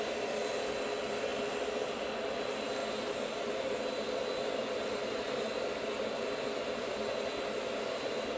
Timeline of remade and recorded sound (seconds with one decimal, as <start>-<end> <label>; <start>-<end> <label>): 0.0-8.4 recorded